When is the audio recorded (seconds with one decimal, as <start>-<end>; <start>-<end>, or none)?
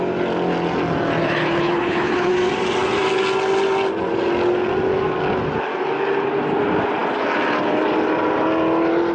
0.0-1.2; 2.3-9.1